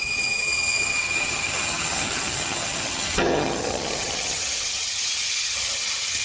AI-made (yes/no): yes